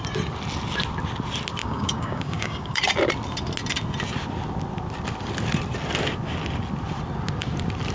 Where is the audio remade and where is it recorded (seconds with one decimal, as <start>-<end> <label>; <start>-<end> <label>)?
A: 0.0-1.6 recorded; 1.6-2.8 remade; 2.8-7.9 recorded